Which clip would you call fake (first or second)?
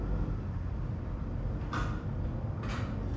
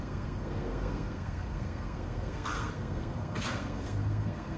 second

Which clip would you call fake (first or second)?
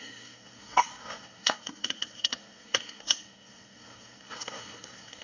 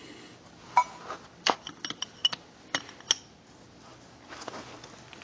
first